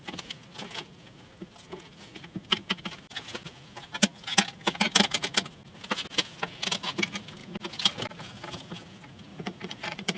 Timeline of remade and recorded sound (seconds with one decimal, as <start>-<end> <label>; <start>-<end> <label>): 0.0-9.3 recorded; 9.3-10.2 remade

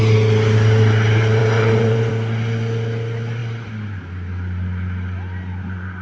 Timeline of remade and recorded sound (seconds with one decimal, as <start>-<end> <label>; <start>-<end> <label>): 0.0-1.4 recorded; 1.4-2.1 remade; 2.1-6.0 recorded

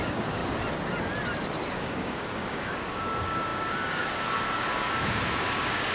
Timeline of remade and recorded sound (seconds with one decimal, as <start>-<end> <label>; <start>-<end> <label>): 0.0-0.4 remade; 0.4-1.7 recorded; 1.7-5.9 remade

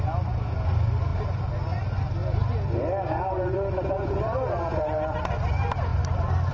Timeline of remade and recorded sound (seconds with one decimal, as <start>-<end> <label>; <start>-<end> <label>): 0.0-6.5 recorded